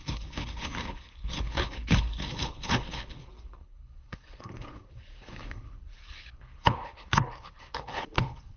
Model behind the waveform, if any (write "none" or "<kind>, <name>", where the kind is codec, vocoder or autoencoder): codec, HILCodec